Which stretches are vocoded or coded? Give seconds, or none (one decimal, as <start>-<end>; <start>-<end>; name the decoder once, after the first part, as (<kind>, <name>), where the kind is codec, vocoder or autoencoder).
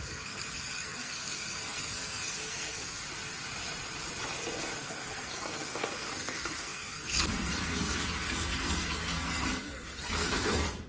0.0-3.0 (codec, SNAC); 4.8-10.9